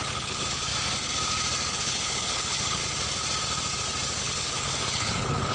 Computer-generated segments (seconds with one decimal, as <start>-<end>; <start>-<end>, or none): 0.0-0.7; 1.7-2.8; 4.2-5.5